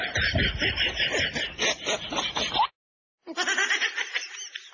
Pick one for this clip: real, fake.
real